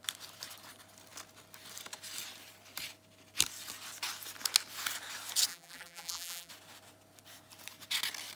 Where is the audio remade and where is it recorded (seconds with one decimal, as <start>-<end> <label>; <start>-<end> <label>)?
0.0-5.5 recorded; 5.5-6.5 remade; 6.5-8.3 recorded

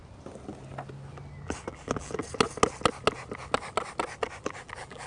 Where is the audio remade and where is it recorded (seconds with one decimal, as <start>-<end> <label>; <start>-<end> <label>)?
0.0-1.7 recorded; 1.7-2.2 remade; 2.2-4.4 recorded; 4.4-5.1 remade